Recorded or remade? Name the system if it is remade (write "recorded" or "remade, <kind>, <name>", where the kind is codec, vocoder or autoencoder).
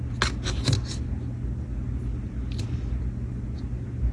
recorded